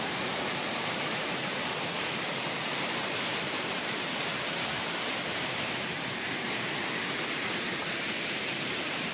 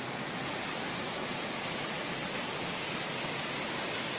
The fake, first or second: first